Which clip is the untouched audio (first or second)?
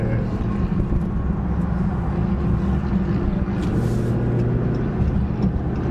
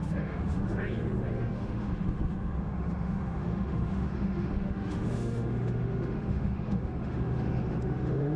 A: first